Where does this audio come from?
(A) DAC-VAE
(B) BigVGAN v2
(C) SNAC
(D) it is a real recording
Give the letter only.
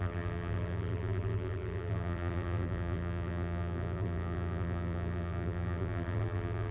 B